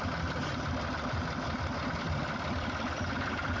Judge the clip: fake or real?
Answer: real